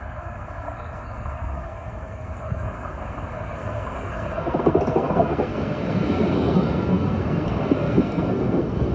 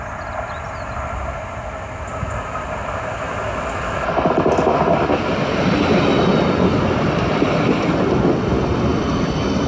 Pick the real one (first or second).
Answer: second